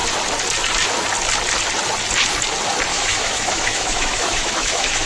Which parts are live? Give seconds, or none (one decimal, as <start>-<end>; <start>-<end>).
0.0-2.9